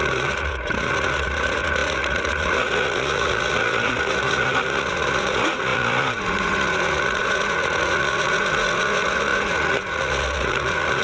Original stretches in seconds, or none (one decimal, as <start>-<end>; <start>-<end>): none